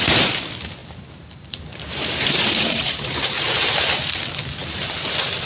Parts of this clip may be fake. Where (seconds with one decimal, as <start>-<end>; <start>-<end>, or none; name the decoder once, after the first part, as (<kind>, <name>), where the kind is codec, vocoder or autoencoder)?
0.8-4.1 (vocoder, BigVGAN v2)